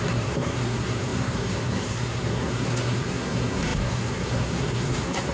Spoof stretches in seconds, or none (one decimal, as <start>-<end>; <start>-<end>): 0.0-5.3